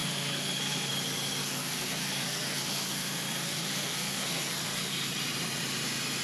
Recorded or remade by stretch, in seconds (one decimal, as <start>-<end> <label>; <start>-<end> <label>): 0.0-0.9 remade; 0.9-1.4 recorded; 1.4-5.1 remade; 5.1-6.2 recorded